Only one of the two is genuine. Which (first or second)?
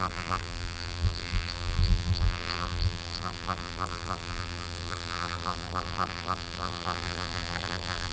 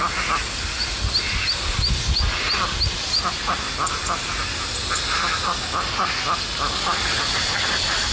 second